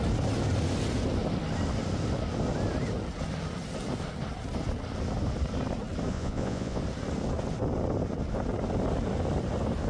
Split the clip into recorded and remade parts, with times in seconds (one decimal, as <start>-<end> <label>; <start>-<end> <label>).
0.0-6.1 recorded; 6.1-6.8 remade; 6.8-9.9 recorded